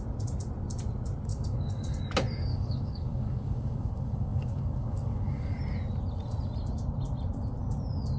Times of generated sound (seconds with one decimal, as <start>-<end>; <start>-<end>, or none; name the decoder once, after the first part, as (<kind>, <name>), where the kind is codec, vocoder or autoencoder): 1.3-2.0 (codec, DAC); 2.5-5.6